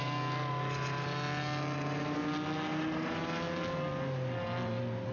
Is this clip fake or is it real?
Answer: real